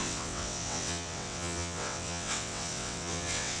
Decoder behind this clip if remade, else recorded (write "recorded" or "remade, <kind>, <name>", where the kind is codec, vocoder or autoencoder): remade, vocoder, WaveNeXt